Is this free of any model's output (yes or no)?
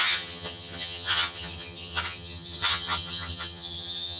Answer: no